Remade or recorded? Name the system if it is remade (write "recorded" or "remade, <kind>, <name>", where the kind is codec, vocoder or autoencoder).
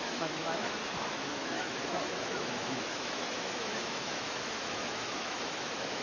remade, autoencoder, DAC-VAE